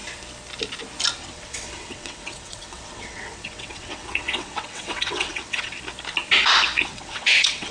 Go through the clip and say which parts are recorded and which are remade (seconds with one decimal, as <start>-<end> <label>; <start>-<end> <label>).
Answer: 0.0-1.2 recorded; 1.2-5.8 remade; 5.8-6.9 recorded; 6.9-7.7 remade

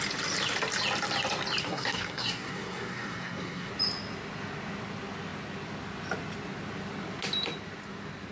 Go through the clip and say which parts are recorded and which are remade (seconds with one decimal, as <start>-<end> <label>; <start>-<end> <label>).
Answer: 0.0-1.6 recorded; 1.6-3.7 remade; 3.7-8.3 recorded